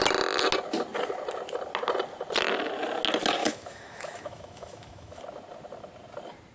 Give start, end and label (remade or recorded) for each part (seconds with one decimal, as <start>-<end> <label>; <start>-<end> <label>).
0.0-3.4 recorded; 3.4-5.2 remade; 5.2-6.5 recorded